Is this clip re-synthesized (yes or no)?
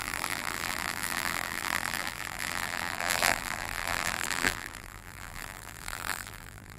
yes